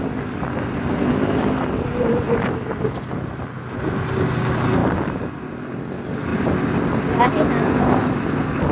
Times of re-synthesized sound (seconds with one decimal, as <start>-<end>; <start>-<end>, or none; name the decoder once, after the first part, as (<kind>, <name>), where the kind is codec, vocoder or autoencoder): none